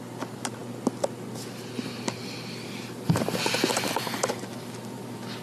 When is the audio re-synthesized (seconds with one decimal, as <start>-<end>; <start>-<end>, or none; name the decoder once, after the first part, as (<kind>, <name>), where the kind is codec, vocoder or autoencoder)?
none